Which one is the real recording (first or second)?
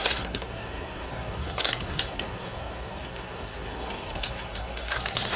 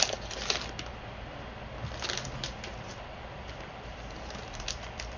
second